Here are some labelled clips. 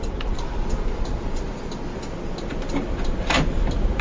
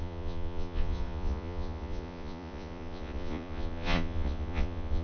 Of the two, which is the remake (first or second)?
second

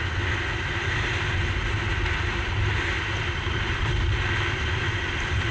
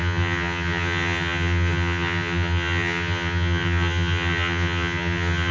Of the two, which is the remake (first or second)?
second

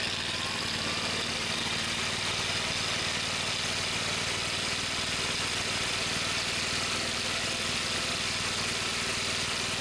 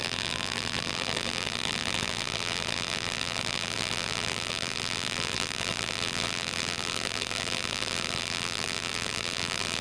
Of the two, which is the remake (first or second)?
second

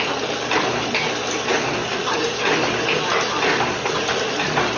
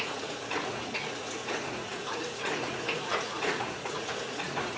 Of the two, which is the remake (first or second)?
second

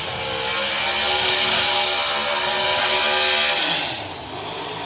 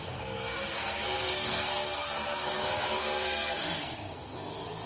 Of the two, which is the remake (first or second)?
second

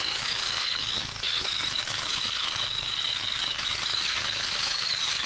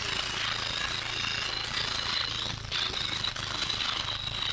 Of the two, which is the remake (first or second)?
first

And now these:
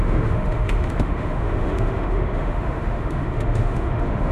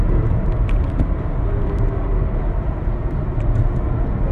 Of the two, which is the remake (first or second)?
first